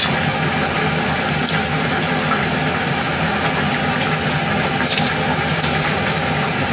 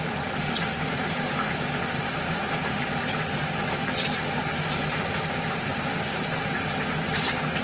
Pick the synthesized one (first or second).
second